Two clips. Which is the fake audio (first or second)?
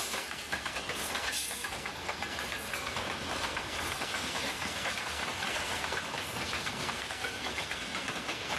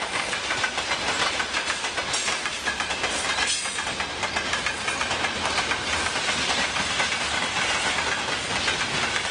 first